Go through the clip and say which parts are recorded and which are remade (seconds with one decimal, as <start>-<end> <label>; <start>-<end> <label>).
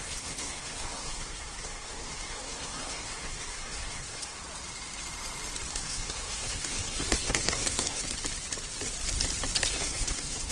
0.0-4.4 remade; 4.4-5.7 recorded; 5.7-8.0 remade; 8.0-9.7 recorded; 9.7-10.5 remade